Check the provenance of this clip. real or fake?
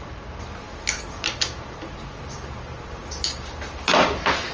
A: real